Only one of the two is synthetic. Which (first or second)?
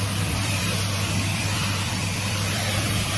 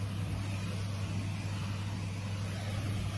first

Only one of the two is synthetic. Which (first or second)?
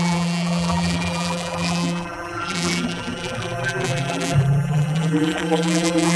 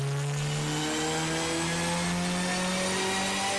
first